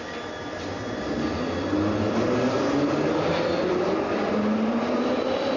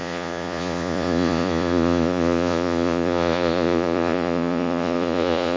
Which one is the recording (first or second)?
first